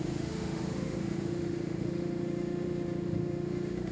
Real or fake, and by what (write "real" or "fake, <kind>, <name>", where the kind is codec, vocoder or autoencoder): fake, autoencoder, DAC-VAE